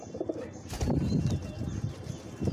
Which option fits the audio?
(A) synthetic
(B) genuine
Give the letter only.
B